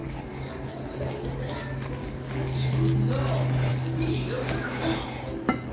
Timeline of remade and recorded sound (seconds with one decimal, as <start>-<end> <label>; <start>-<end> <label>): 0.0-0.7 remade; 0.7-2.0 recorded; 2.0-2.7 remade; 2.7-3.7 recorded; 3.7-4.7 remade; 4.7-5.7 recorded